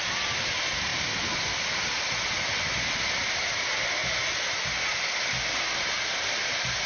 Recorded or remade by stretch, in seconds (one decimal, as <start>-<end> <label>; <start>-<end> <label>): 0.0-6.9 recorded